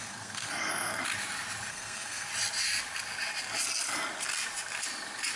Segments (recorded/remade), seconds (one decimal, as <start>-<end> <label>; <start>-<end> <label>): 0.0-1.0 remade; 1.0-1.7 recorded; 1.7-2.3 remade; 2.3-5.4 recorded